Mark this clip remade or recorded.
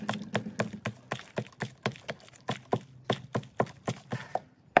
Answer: recorded